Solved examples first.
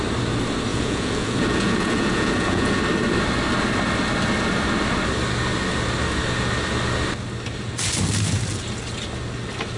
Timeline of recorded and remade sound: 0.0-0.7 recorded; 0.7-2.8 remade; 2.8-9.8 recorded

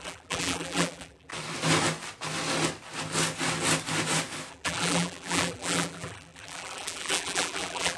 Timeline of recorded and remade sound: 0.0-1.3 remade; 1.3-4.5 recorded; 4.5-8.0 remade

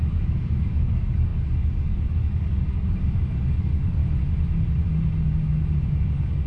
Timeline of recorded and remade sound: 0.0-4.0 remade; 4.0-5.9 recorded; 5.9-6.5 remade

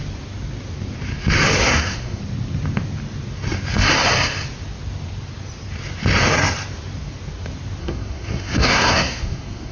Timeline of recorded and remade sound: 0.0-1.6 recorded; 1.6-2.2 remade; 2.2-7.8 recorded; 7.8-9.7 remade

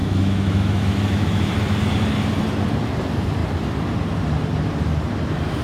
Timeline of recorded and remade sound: 0.0-1.5 remade; 1.5-5.6 recorded

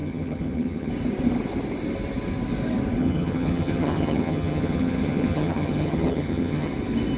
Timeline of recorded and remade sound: 0.0-0.9 remade; 0.9-3.0 recorded; 3.0-6.7 remade; 6.7-7.2 recorded

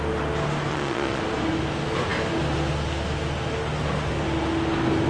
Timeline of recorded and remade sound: 0.0-0.7 recorded; 0.7-1.2 remade; 1.2-5.1 recorded